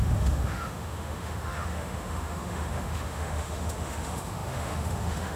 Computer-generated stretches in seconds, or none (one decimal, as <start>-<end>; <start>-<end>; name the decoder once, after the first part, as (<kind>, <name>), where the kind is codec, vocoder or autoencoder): 0.0-5.4 (autoencoder, DAC-VAE)